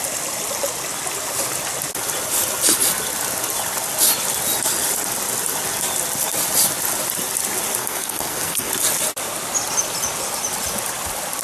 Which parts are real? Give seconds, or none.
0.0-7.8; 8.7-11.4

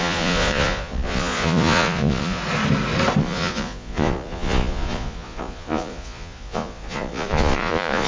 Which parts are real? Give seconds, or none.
2.4-3.2

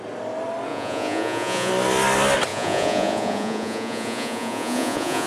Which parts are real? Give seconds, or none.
0.0-0.7; 1.7-2.5

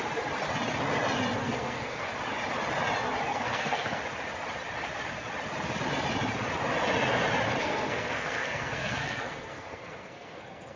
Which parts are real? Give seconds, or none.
0.0-1.4; 2.1-3.3; 4.0-7.6

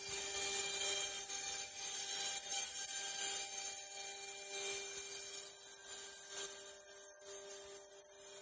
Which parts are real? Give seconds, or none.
0.0-8.4

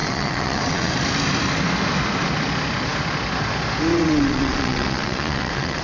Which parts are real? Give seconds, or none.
0.9-3.9

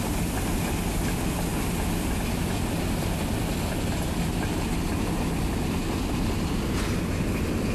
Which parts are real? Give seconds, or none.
0.0-7.7

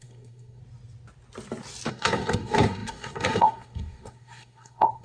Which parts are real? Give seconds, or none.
0.6-1.9